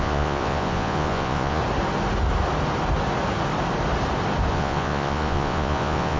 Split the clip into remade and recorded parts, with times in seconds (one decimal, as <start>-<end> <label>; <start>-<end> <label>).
0.0-1.6 remade; 1.6-4.5 recorded; 4.5-6.2 remade